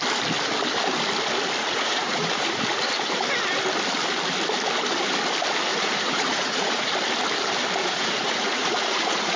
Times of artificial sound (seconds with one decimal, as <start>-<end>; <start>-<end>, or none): 1.6-2.4; 5.7-6.9; 7.8-9.4